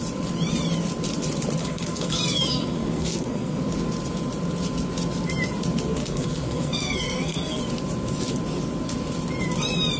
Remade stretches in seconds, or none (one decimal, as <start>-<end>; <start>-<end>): 1.6-3.6; 6.0-7.6